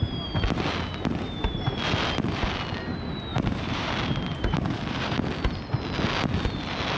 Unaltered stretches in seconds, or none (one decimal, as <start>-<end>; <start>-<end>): 0.0-3.3; 3.9-4.3; 5.2-7.0